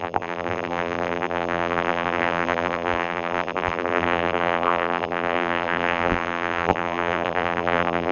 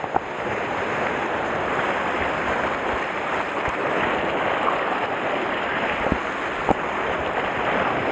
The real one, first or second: second